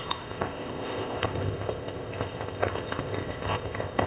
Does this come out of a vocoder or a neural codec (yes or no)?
yes